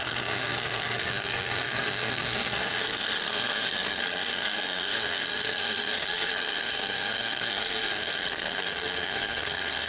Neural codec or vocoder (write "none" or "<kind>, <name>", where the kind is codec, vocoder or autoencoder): codec, SNAC